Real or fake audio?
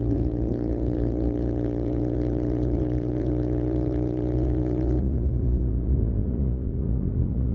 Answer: fake